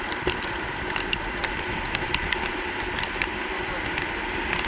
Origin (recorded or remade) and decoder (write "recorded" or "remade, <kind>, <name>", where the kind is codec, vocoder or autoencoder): recorded